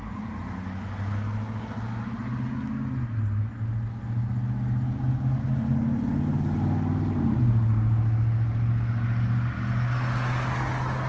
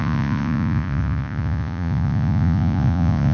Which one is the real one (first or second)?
first